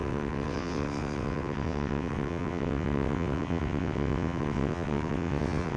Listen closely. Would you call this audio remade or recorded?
remade